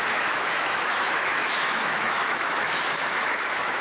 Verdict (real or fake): fake